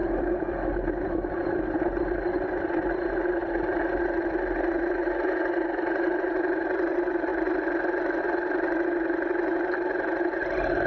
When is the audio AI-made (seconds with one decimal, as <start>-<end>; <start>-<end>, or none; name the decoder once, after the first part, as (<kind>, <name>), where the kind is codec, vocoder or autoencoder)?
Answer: 0.0-7.3 (vocoder, BigVGAN v2); 8.2-10.9